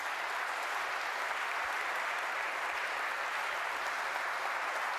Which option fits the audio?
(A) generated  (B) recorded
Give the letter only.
B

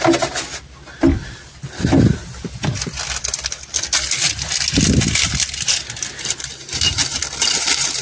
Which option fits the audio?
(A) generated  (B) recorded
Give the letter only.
B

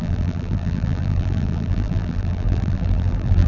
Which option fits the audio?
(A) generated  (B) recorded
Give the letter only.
A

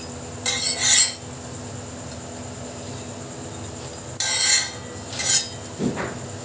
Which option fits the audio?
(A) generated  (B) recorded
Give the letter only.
B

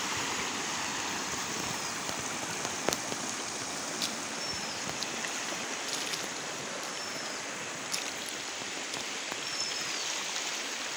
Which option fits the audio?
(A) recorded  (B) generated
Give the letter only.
A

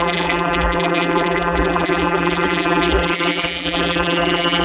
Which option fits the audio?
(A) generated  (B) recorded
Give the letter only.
A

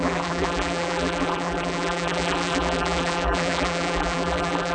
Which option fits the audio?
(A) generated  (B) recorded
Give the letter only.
A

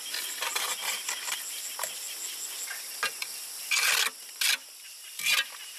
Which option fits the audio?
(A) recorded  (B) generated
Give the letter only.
A